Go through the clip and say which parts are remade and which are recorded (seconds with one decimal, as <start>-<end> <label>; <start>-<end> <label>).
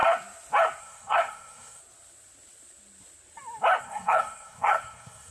0.0-0.8 recorded; 0.8-1.8 remade; 1.8-3.8 recorded; 3.8-5.3 remade